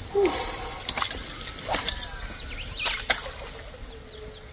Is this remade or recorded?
recorded